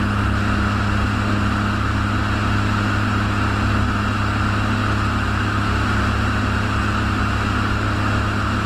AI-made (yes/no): no